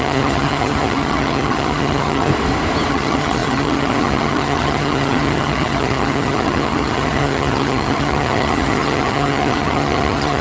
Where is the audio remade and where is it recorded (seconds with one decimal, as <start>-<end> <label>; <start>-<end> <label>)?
0.0-2.3 remade; 2.3-2.9 recorded; 2.9-10.4 remade